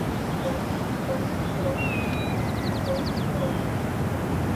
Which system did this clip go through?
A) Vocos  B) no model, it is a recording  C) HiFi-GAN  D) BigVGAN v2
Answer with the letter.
B